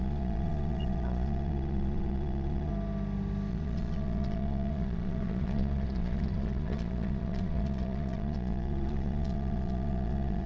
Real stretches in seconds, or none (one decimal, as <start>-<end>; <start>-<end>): 2.7-3.5